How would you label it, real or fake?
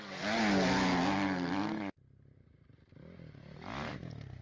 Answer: real